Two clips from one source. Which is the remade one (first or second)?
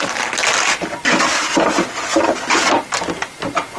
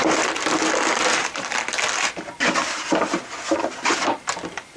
second